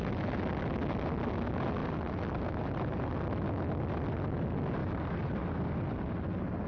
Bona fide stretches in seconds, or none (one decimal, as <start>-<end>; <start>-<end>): 0.0-1.8; 3.1-4.8; 5.8-6.7